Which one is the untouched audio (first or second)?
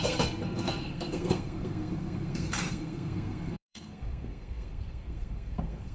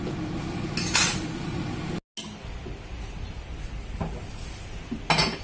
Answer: second